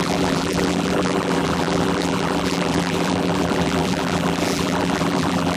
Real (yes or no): no